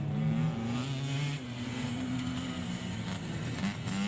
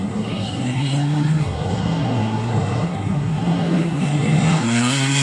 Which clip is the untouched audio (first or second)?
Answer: first